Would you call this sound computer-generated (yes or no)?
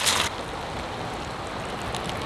no